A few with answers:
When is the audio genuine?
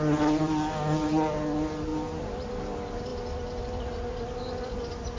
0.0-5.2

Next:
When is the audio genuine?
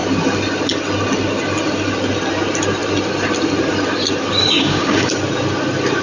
0.0-4.4; 5.1-6.0